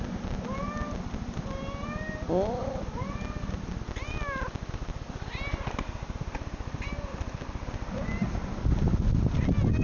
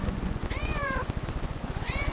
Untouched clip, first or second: first